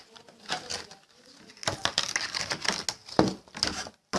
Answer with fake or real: real